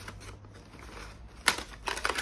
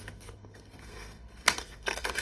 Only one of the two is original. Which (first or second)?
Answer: first